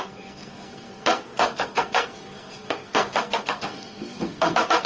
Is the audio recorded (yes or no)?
no